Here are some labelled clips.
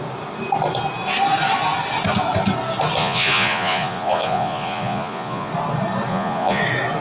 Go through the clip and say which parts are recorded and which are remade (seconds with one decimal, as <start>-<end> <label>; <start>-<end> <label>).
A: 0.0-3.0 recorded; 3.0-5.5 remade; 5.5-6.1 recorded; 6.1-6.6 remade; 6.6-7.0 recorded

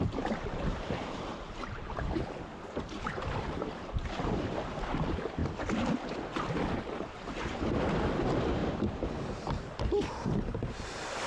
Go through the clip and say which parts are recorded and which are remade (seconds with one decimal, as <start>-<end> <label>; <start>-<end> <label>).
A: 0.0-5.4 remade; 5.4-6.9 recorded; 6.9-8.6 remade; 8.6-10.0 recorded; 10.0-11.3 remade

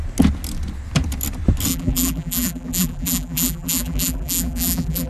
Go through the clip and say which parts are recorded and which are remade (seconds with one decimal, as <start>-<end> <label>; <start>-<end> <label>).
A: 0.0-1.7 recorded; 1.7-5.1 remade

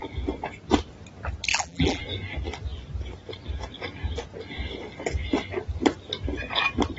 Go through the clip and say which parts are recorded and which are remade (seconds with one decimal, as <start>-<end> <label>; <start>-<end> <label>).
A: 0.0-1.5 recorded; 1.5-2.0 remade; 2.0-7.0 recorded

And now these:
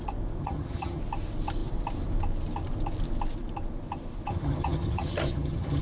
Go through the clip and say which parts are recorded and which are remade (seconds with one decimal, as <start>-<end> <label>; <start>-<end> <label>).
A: 0.0-0.4 recorded; 0.4-1.0 remade; 1.0-4.3 recorded; 4.3-5.8 remade